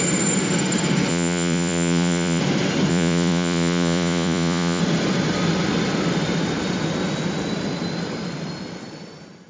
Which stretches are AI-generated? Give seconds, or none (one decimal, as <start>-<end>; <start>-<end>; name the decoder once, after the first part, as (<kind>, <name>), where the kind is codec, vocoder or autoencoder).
1.1-2.4 (vocoder, Vocos); 2.9-4.8